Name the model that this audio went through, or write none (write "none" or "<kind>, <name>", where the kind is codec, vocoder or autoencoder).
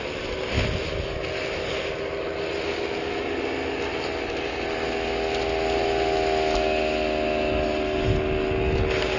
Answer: none